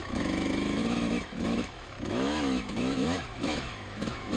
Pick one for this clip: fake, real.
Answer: fake